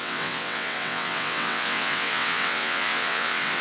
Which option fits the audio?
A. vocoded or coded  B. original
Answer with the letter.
A